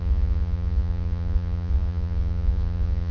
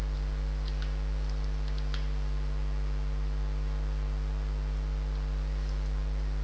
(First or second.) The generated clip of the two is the first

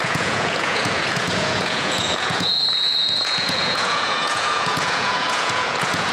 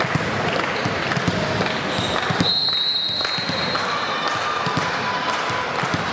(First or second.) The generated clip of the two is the first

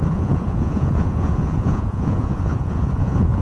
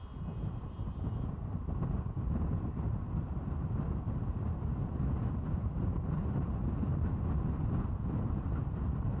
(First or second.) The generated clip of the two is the first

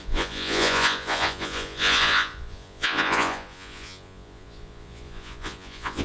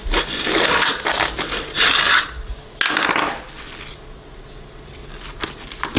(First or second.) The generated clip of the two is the first